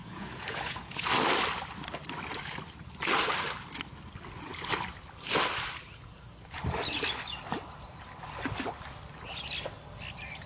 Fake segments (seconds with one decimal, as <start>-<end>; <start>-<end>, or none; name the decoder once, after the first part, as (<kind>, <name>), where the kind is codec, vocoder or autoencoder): 0.0-1.0 (vocoder, Vocos)